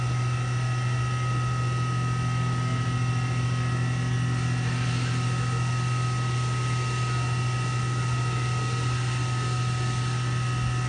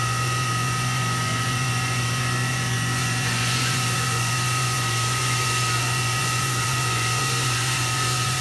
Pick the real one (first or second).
first